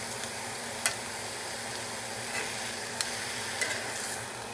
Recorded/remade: recorded